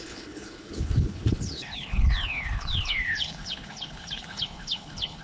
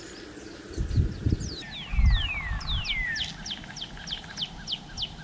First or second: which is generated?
first